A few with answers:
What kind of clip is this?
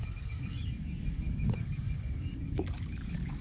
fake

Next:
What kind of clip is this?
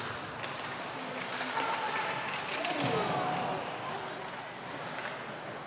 real